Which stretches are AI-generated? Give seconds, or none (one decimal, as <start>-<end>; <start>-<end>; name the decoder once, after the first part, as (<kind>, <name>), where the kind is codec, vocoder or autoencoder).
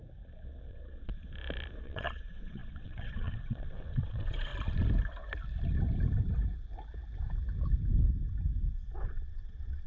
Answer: 0.7-1.1 (vocoder, WaveNeXt); 1.8-4.5; 8.9-9.9